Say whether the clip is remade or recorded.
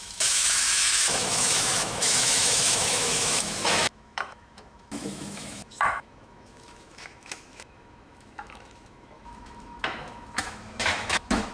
remade